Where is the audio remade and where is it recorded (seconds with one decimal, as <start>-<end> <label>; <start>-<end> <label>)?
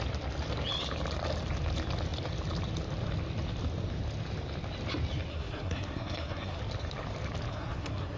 0.0-5.3 recorded; 5.3-6.6 remade; 6.6-7.5 recorded; 7.5-8.2 remade